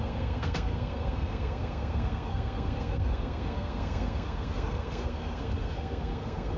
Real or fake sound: fake